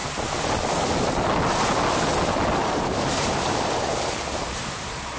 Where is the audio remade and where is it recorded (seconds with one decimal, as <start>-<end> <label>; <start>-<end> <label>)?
0.0-2.6 recorded; 2.6-4.6 remade; 4.6-5.2 recorded